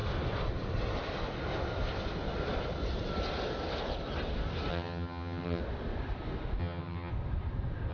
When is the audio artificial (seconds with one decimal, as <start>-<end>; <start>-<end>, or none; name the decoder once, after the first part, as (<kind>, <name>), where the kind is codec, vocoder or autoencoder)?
4.7-5.6 (vocoder, HiFi-GAN); 6.6-7.1

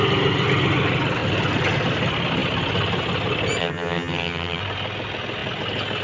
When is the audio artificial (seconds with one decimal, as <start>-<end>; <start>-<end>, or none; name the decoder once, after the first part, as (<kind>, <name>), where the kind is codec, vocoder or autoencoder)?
3.6-4.6 (vocoder, HiFi-GAN)

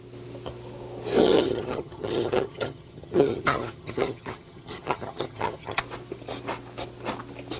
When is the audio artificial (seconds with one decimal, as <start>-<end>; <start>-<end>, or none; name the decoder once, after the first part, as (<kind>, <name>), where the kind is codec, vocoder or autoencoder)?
1.2-5.8 (vocoder, HiFi-GAN)

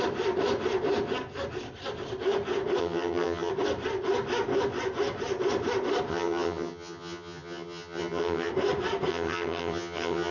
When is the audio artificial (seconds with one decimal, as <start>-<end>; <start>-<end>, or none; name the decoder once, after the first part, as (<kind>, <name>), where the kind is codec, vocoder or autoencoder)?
2.8-3.5 (vocoder, HiFi-GAN); 6.1-8.5; 9.1-10.3